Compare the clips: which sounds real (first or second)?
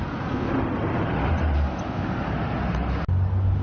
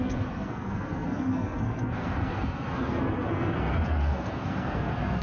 first